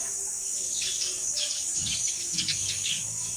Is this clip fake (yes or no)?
yes